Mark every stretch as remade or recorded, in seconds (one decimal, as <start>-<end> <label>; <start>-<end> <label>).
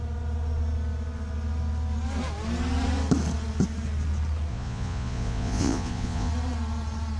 0.0-4.5 recorded; 4.5-6.3 remade; 6.3-7.2 recorded